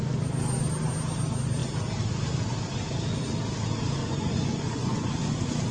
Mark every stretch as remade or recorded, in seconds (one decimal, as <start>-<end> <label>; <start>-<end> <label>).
0.0-4.0 recorded; 4.0-5.1 remade; 5.1-5.7 recorded